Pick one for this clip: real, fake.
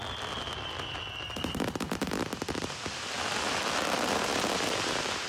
real